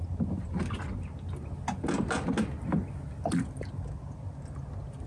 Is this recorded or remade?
recorded